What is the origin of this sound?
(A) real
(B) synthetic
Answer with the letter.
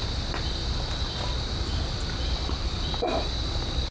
B